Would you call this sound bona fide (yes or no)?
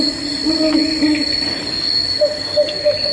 yes